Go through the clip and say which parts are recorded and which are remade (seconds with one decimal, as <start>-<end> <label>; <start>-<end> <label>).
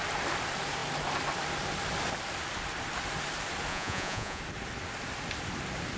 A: 0.0-3.7 recorded; 3.7-4.4 remade; 4.4-6.0 recorded